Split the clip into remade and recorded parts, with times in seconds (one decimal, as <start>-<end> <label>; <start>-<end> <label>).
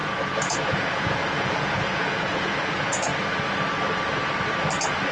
0.0-3.1 remade; 3.1-5.1 recorded